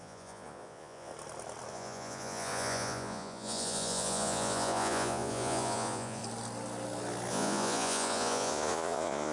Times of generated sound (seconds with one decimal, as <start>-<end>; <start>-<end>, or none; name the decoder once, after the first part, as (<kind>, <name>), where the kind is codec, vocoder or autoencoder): 0.0-1.1 (vocoder, Vocos); 1.7-6.2; 7.3-9.3